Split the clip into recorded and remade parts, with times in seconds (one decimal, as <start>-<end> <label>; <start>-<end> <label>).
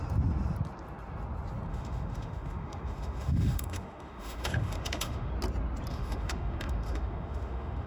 0.0-1.7 recorded; 1.7-5.3 remade; 5.3-5.9 recorded; 5.9-7.9 remade